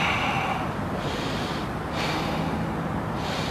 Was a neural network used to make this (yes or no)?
no